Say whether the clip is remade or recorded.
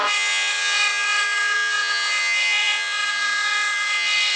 remade